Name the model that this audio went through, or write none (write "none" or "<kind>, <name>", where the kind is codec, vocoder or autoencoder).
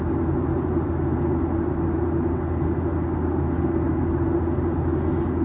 none